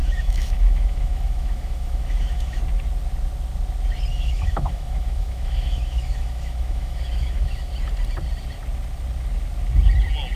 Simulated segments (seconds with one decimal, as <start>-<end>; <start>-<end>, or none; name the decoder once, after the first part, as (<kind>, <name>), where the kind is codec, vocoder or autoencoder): 0.0-2.6 (autoencoder, DAC-VAE); 4.1-7.7